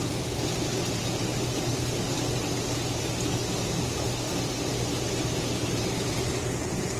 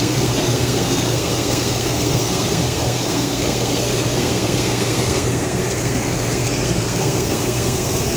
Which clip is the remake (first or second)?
second